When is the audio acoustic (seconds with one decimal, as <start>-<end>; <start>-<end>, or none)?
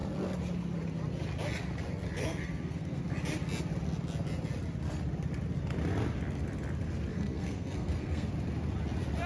0.0-2.2; 3.0-7.1; 8.3-9.3